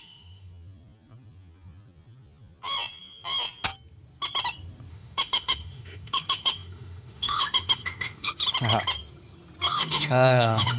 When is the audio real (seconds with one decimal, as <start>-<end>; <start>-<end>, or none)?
0.5-4.9; 8.3-9.7